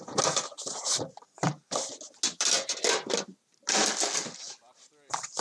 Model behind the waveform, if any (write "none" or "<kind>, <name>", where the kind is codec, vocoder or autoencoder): none